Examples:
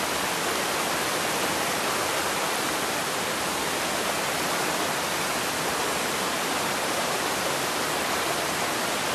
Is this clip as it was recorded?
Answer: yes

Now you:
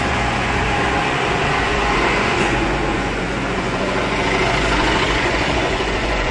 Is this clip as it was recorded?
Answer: no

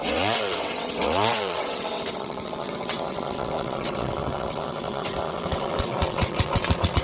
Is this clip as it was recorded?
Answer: no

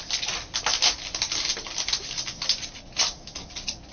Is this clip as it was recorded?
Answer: yes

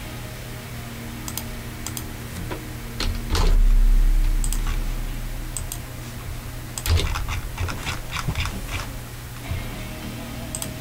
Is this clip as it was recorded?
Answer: yes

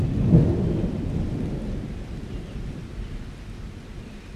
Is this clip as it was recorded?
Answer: yes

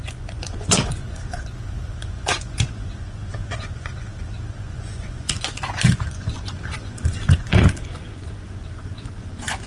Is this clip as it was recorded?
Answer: no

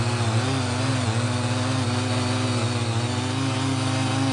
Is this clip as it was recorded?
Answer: yes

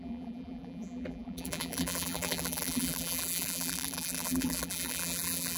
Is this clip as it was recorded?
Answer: no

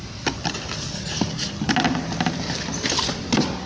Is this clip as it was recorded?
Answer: yes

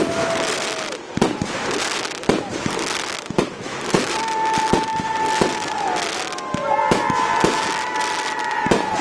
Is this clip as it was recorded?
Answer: yes